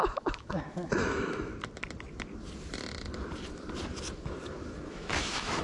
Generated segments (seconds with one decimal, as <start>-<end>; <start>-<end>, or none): 0.0-1.5; 4.9-5.6